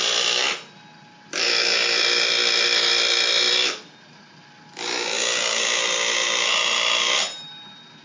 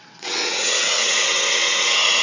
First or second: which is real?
first